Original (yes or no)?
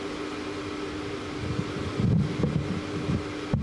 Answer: yes